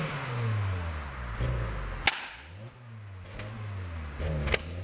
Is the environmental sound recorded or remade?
recorded